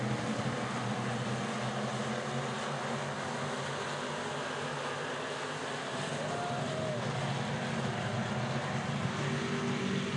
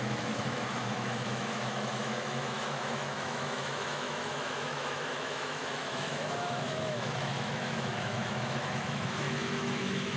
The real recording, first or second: first